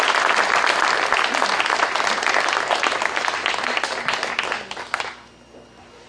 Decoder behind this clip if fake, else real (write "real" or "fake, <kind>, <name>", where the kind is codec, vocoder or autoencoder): real